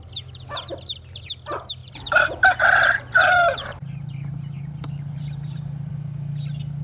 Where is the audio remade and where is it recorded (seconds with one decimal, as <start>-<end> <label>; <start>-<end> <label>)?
0.0-1.8 recorded; 1.8-5.9 remade; 5.9-6.8 recorded